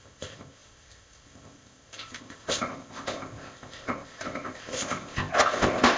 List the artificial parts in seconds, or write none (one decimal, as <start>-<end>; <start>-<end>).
0.0-6.0